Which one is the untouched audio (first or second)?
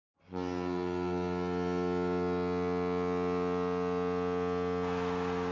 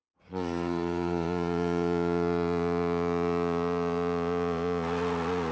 first